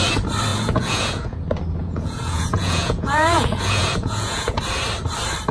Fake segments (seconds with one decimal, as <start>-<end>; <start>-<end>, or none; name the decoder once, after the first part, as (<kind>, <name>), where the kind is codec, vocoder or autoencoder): 0.5-1.4 (vocoder, Vocos); 1.8-4.6